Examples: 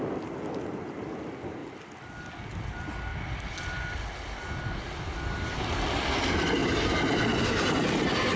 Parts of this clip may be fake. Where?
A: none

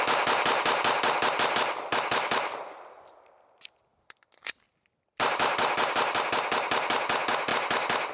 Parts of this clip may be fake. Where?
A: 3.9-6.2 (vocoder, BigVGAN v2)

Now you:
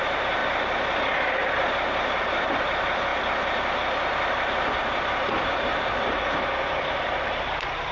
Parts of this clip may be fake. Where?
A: 0.4-1.5 (vocoder, BigVGAN v2); 3.1-7.9